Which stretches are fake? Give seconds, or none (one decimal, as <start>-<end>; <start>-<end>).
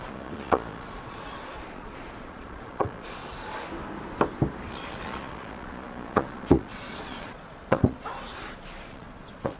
0.0-3.2; 4.7-9.6